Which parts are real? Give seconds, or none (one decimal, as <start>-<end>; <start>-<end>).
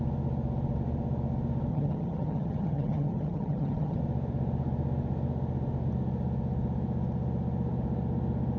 0.0-1.7; 4.0-8.6